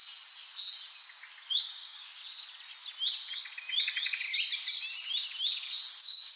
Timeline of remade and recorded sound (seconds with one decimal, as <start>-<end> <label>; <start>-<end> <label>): 0.0-1.5 recorded; 1.5-2.2 remade; 2.2-6.0 recorded; 6.0-6.4 remade